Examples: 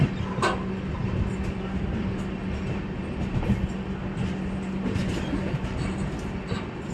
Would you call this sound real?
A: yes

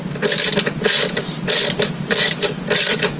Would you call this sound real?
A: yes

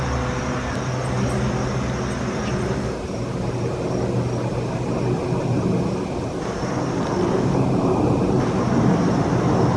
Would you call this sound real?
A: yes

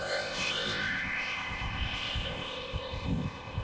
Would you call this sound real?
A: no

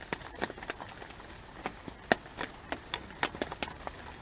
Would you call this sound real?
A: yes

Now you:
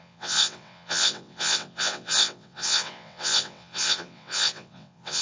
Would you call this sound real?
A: no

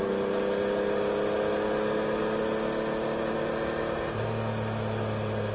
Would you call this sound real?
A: yes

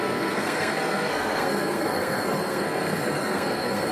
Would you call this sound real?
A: no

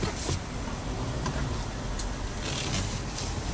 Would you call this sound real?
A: no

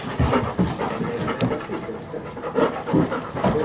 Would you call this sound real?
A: yes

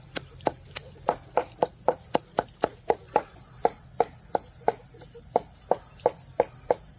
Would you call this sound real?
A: no